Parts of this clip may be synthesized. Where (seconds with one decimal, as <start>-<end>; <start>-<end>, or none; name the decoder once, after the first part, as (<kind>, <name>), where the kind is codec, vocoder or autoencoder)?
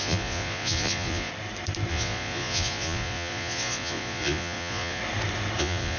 0.0-1.3 (vocoder, Vocos); 1.9-5.0; 5.6-6.0